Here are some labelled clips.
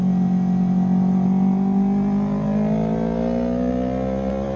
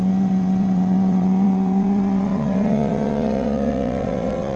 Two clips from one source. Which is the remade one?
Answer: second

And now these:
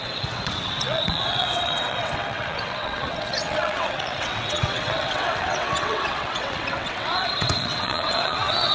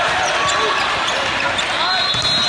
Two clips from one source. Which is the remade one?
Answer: first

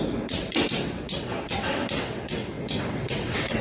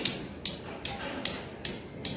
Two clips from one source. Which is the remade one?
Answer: first